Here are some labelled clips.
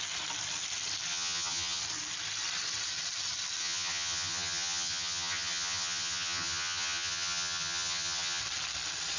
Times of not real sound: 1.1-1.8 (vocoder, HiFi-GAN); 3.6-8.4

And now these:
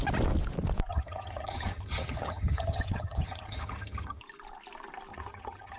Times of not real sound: 0.9-4.2 (vocoder, HiFi-GAN); 5.1-5.8

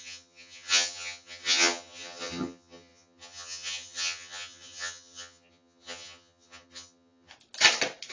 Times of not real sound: 0.0-7.3 (vocoder, HiFi-GAN)

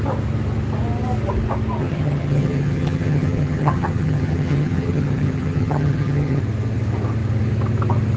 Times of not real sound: 1.8-6.4 (vocoder, HiFi-GAN)

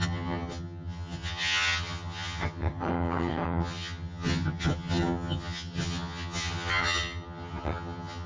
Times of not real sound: 0.0-8.3 (vocoder, HiFi-GAN)

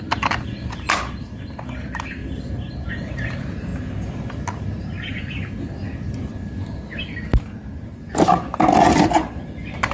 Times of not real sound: none

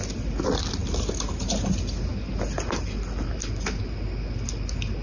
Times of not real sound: none

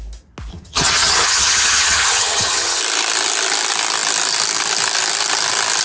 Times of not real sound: 0.5-2.8 (vocoder, HiFi-GAN)